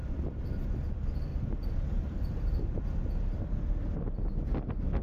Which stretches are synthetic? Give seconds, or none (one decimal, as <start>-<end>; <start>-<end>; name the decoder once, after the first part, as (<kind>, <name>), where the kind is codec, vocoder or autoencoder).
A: 1.3-2.8 (vocoder, BigVGAN v2)